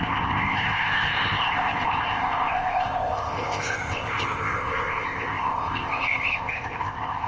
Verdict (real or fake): fake